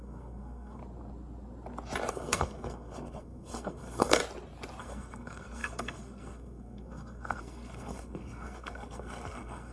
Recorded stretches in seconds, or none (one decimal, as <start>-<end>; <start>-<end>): 0.8-2.1; 4.2-4.8